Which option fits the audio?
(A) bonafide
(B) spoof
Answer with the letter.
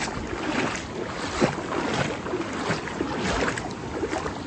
A